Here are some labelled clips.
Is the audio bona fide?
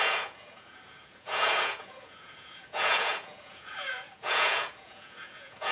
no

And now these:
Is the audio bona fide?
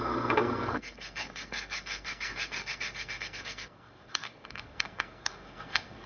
no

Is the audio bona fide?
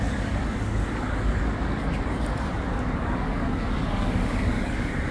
no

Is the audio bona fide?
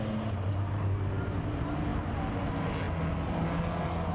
yes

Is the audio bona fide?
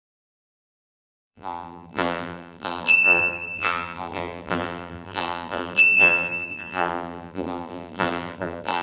no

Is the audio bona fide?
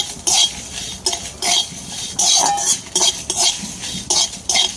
yes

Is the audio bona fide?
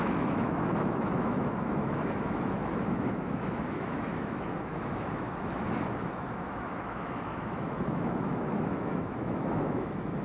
no